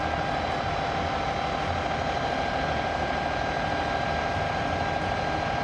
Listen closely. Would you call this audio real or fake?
real